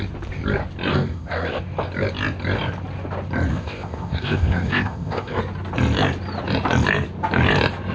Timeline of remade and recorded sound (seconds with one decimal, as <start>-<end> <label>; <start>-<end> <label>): 0.0-0.9 recorded; 0.9-1.6 remade; 1.6-3.5 recorded; 3.5-5.4 remade; 5.4-7.9 recorded